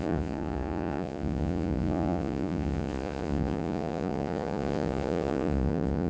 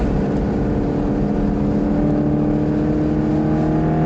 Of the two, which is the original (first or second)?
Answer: second